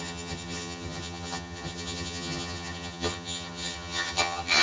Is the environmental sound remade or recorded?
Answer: remade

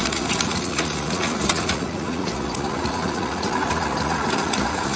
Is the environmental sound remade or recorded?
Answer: remade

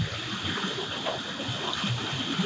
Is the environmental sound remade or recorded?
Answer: recorded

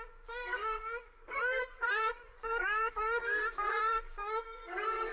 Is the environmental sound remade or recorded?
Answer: remade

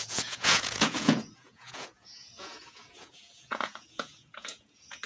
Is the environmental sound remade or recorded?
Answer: remade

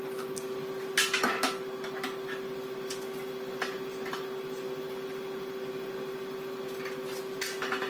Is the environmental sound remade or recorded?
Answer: recorded